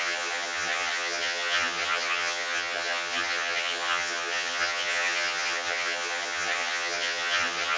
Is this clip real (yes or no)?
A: no